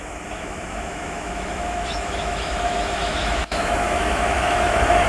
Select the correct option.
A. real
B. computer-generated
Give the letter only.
B